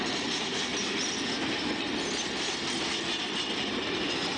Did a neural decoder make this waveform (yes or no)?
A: no